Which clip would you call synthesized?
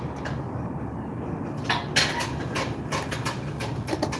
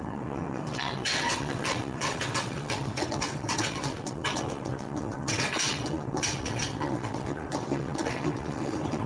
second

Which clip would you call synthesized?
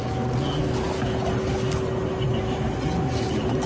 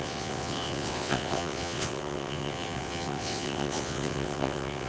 second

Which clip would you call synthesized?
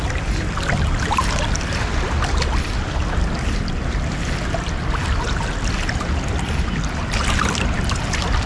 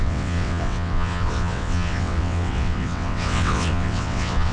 second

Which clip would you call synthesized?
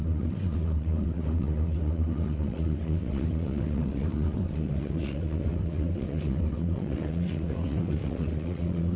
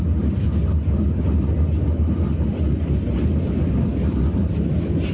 first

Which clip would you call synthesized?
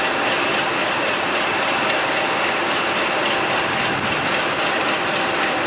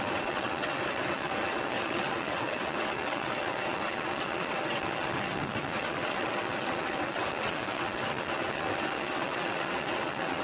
second